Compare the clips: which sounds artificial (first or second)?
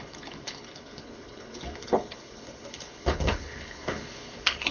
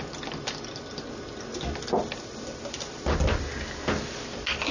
first